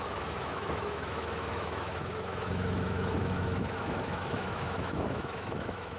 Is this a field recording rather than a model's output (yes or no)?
no